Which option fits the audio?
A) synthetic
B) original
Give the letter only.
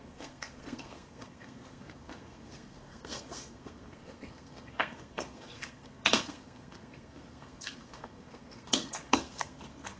A